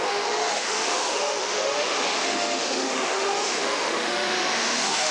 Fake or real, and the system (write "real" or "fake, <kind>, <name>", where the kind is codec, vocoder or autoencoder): fake, autoencoder, DAC-VAE